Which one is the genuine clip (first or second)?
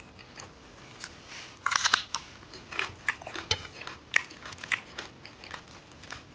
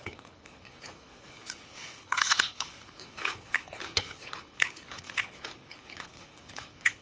first